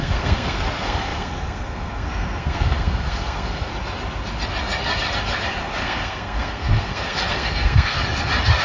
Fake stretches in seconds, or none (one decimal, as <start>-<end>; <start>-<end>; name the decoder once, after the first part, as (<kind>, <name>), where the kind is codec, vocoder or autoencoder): 0.0-3.7 (codec, SNAC); 5.6-8.0